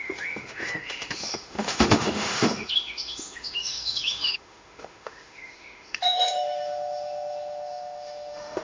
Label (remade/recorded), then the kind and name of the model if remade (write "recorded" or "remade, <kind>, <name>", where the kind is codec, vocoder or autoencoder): remade, autoencoder, DAC-VAE